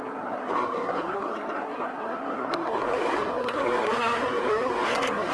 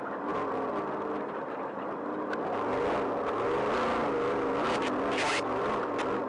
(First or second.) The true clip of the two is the second